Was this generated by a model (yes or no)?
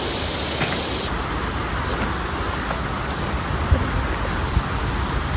no